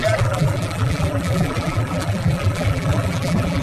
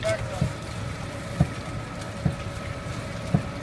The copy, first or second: first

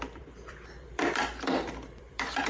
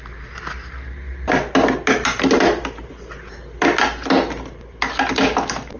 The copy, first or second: first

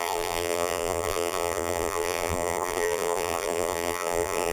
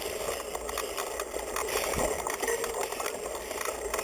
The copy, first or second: first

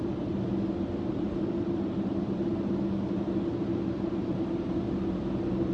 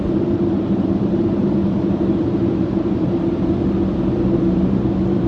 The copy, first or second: second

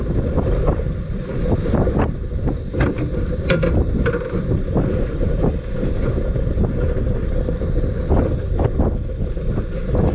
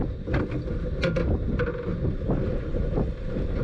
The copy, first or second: first